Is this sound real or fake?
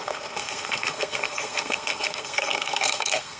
fake